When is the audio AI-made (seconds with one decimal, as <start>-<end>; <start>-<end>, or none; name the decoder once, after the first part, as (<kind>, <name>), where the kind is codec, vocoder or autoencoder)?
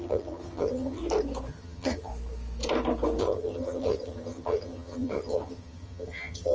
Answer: 0.0-1.0 (vocoder, HiFi-GAN); 1.5-2.1; 3.2-6.5